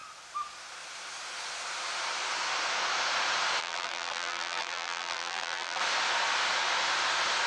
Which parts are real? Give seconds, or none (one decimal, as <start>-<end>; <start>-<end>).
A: 0.0-3.6; 5.8-7.5

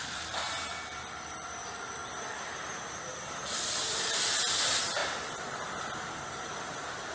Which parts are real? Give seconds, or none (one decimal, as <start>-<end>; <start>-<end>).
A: 2.0-3.0; 5.0-7.1

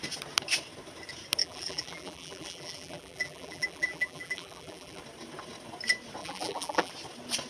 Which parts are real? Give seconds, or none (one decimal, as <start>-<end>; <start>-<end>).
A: 0.0-1.4; 5.0-6.2; 6.9-7.5

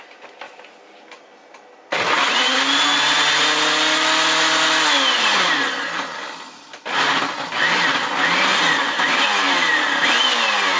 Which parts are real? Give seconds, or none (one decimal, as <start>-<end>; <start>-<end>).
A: 0.0-8.5; 10.2-10.8

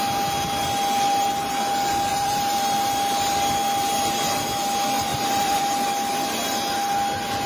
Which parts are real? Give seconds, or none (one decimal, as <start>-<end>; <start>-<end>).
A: 0.0-2.1; 2.6-5.1; 5.6-7.5

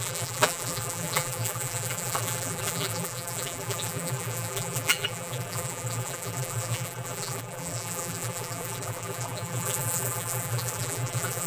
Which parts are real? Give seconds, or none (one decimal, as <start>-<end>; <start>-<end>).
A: none

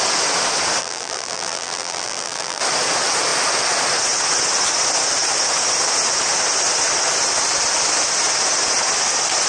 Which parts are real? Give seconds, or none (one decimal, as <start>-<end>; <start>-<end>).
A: 0.0-0.8; 2.6-9.5

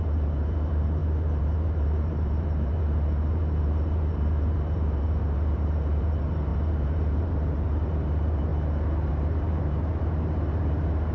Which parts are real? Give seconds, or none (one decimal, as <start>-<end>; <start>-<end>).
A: 8.5-9.1